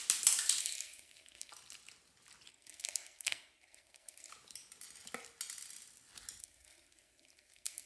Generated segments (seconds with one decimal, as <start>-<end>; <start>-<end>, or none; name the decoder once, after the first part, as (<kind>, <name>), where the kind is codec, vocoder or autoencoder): 0.6-1.5 (codec, SNAC); 2.5-4.3; 6.4-7.9